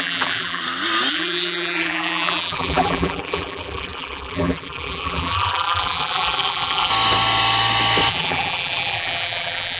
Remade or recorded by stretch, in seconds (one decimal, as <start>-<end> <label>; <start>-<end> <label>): 0.0-0.6 remade; 0.6-1.1 recorded; 1.1-6.9 remade; 6.9-8.1 recorded; 8.1-9.8 remade